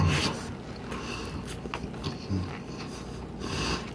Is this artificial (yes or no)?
no